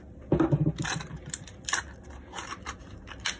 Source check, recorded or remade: recorded